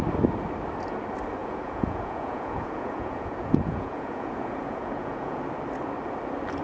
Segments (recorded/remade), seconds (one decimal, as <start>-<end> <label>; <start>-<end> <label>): 0.0-1.4 recorded; 1.4-5.4 remade; 5.4-6.6 recorded